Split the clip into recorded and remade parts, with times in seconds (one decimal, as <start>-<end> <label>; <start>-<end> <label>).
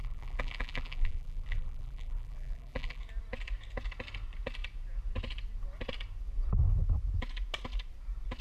0.0-3.0 remade; 3.0-8.4 recorded